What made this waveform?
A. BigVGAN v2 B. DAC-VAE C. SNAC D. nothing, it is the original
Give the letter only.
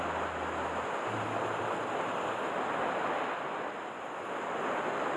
D